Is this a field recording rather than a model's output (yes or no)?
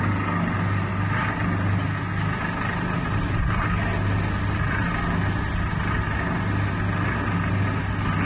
yes